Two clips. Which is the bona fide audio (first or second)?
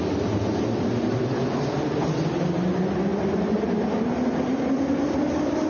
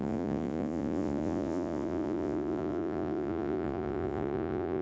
first